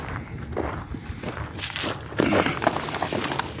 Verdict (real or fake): real